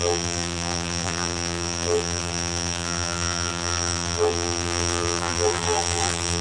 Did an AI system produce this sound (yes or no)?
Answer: yes